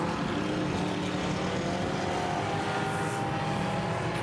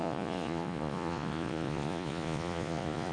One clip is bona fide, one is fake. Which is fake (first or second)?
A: second